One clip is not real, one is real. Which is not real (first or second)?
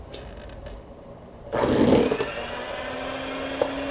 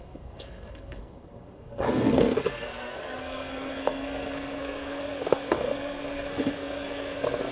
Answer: second